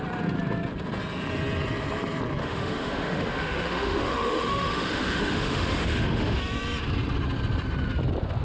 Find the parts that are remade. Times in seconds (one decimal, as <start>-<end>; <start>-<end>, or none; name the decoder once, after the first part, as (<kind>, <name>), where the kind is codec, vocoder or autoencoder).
2.4-6.4 (autoencoder, DAC-VAE)